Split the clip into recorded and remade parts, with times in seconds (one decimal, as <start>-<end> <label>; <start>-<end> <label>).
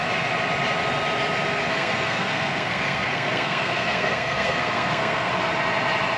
0.0-1.7 recorded; 1.7-5.3 remade; 5.3-6.2 recorded